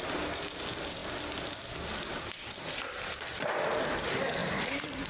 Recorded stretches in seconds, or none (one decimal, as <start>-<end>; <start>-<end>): 0.0-4.4